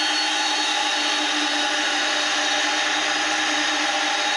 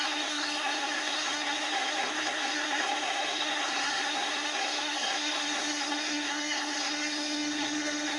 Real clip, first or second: first